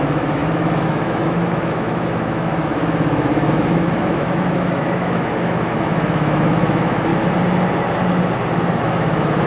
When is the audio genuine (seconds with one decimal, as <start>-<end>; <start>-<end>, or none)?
7.1-8.8